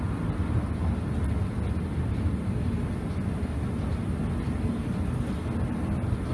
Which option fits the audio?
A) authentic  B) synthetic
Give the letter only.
A